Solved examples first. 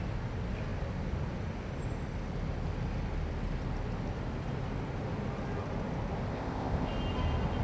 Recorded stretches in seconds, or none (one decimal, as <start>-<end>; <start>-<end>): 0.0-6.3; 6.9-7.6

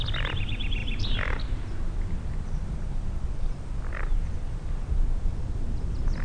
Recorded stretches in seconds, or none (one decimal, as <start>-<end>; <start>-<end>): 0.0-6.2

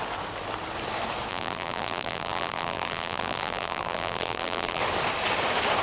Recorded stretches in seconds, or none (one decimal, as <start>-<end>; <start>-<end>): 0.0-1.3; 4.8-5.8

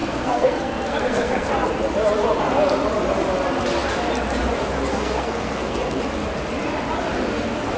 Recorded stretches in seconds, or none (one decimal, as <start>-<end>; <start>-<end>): 1.5-4.9; 6.0-7.8

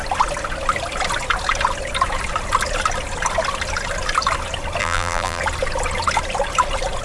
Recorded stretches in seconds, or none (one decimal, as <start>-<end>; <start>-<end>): 0.0-4.8; 5.4-7.0

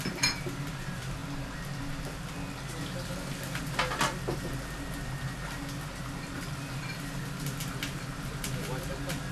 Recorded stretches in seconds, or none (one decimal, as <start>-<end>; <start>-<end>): 0.0-9.3

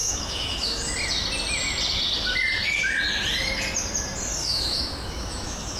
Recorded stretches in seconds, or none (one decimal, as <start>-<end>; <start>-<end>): 0.8-4.4

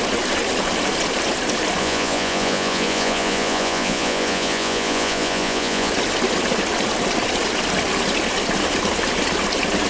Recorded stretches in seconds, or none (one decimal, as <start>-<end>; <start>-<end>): 0.0-1.8; 5.9-9.9